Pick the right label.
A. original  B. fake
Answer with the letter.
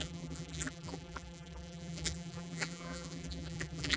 B